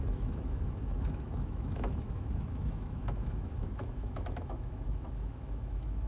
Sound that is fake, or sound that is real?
fake